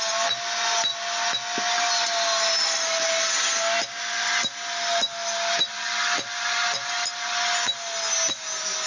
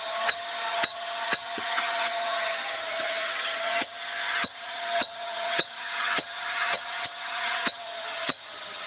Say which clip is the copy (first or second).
second